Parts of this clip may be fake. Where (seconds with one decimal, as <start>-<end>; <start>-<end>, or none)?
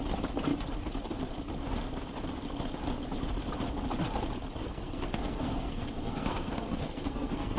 4.6-7.6